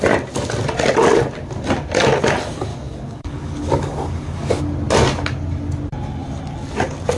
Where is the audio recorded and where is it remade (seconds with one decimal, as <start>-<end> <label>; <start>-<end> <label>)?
0.0-2.7 recorded; 2.7-4.6 remade; 4.6-7.2 recorded